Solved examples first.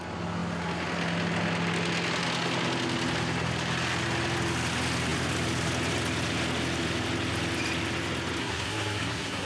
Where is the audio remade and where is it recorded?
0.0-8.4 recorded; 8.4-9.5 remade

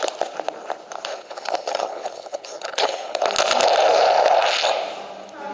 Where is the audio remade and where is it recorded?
0.0-1.1 recorded; 1.1-3.2 remade; 3.2-5.5 recorded